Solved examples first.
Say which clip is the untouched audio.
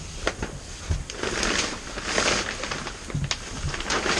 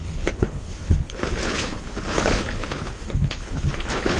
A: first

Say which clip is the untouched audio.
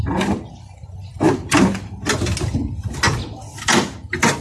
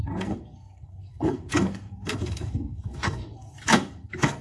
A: first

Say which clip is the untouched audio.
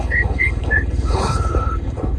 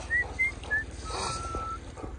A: second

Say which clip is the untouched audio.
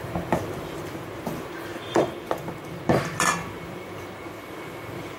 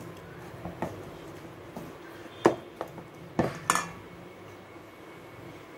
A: second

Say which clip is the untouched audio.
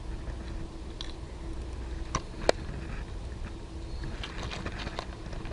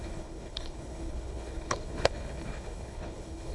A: first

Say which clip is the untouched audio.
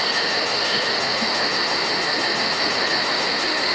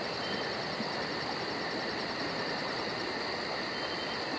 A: second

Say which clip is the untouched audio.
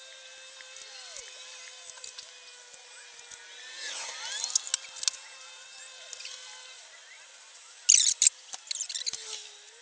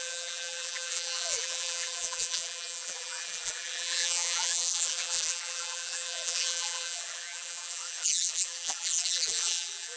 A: first